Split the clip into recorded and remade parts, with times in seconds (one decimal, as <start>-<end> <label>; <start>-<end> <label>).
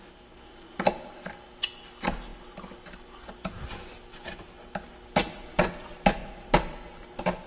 0.0-7.5 recorded